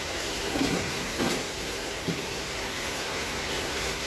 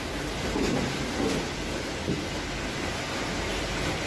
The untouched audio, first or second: second